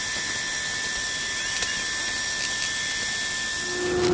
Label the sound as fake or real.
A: real